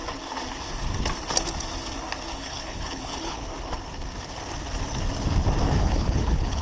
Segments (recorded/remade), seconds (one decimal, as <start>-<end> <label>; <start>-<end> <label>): 0.0-2.3 recorded; 2.3-3.5 remade; 3.5-5.8 recorded; 5.8-6.6 remade